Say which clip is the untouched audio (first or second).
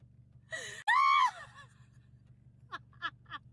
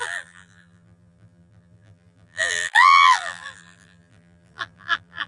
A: first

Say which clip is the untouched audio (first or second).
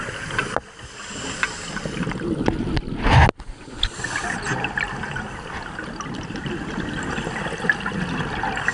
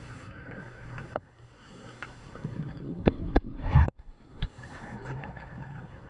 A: first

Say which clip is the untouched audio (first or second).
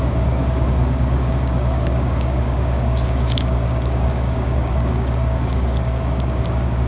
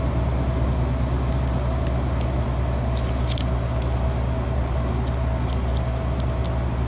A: second